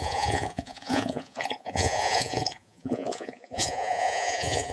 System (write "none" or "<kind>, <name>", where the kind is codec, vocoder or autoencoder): vocoder, Vocos